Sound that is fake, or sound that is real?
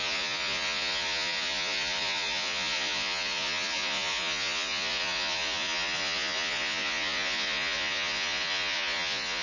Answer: fake